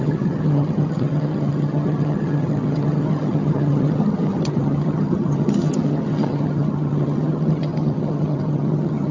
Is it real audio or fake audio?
fake